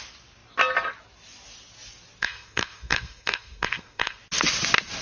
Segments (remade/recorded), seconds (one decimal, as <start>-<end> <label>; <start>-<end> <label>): 0.0-2.2 recorded; 2.2-4.2 remade; 4.2-5.0 recorded